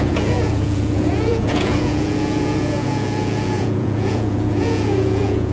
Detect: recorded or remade remade